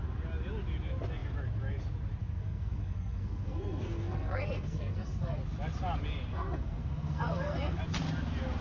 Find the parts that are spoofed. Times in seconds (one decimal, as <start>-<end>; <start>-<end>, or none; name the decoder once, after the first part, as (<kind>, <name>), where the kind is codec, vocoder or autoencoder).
2.2-5.4 (codec, SNAC); 6.3-7.8

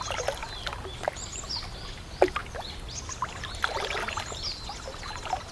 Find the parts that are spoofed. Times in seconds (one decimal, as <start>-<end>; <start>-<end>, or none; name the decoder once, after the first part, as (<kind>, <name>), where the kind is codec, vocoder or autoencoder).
none

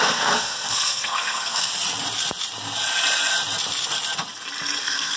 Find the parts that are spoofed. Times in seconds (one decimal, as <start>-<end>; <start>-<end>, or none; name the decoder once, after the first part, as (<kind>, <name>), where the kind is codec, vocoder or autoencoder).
0.0-1.7 (codec, SNAC); 4.8-5.2

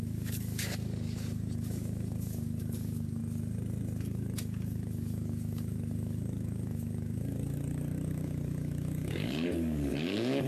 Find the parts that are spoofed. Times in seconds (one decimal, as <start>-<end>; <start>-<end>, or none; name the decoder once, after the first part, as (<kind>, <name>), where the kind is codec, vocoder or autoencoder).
0.0-3.2 (codec, DAC); 4.0-10.5

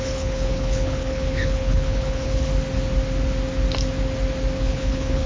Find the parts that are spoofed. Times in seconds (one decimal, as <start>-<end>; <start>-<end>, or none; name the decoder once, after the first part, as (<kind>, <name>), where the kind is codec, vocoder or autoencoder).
0.0-2.5 (codec, HILCodec); 4.6-5.3